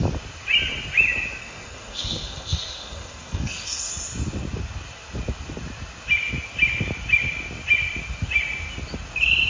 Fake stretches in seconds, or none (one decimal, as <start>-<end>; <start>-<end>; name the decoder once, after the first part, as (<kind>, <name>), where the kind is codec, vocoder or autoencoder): 1.4-3.9 (codec, SNAC)